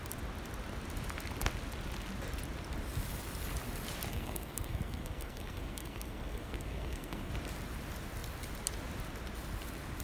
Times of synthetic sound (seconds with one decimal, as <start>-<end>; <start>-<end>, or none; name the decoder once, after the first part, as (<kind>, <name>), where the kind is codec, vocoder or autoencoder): 4.1-7.3 (codec, SNAC)